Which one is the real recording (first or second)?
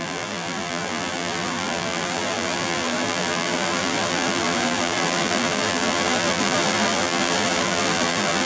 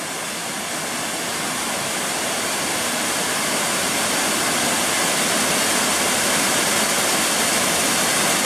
second